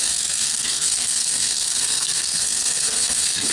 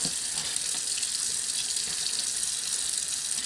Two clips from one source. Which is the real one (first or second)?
second